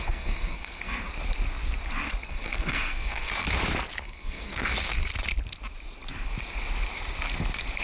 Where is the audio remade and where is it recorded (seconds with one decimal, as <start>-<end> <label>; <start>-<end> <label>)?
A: 0.0-1.1 remade; 1.1-2.2 recorded; 2.2-3.4 remade; 3.4-4.0 recorded; 4.0-5.1 remade; 5.1-7.8 recorded